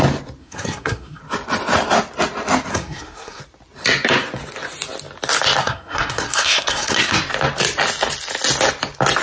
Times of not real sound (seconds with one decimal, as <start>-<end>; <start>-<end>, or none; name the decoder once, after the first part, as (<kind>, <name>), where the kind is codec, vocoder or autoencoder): 0.4-1.2 (codec, SNAC); 2.7-3.4; 5.6-7.2